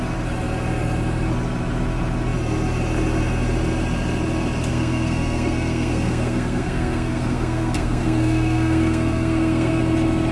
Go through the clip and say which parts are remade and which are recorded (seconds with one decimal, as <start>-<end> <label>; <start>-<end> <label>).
0.0-4.7 recorded; 4.7-9.8 remade; 9.8-10.3 recorded